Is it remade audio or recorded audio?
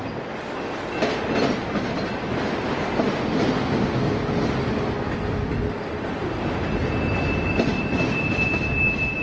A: recorded